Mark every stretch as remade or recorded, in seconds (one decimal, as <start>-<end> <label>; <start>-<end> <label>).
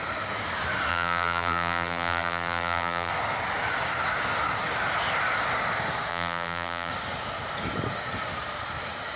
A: 0.0-0.9 recorded; 0.9-3.1 remade; 3.1-6.1 recorded; 6.1-6.9 remade; 6.9-9.2 recorded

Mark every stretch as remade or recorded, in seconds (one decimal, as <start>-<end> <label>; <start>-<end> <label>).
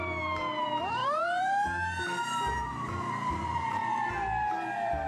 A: 0.0-5.1 remade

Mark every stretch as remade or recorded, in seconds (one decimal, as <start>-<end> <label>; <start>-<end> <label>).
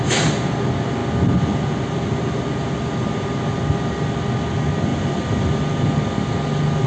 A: 0.0-4.9 recorded; 4.9-5.6 remade; 5.6-6.9 recorded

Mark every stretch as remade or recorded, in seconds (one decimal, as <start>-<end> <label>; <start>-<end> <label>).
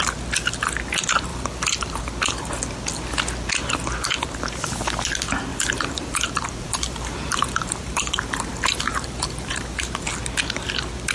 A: 0.0-1.3 recorded; 1.3-2.0 remade; 2.0-5.5 recorded; 5.5-10.0 remade; 10.0-11.1 recorded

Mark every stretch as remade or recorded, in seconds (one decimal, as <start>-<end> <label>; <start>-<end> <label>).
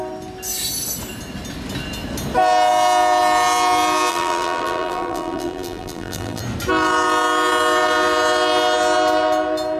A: 0.0-4.1 recorded; 4.1-6.4 remade; 6.4-9.8 recorded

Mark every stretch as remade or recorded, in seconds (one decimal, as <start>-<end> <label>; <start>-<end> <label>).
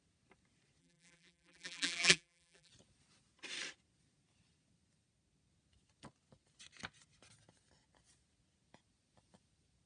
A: 0.0-0.8 recorded; 0.8-2.7 remade; 2.7-9.9 recorded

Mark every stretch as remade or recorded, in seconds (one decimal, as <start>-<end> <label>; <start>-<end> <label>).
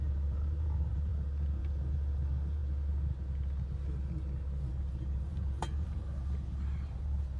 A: 0.0-1.1 remade; 1.1-1.6 recorded; 1.6-2.6 remade; 2.6-4.7 recorded; 4.7-7.4 remade